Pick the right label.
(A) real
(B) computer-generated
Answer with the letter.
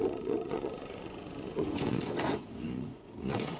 B